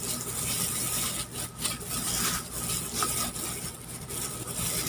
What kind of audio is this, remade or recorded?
recorded